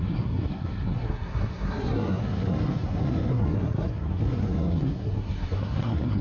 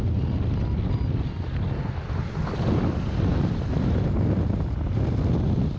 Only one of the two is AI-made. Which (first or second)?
first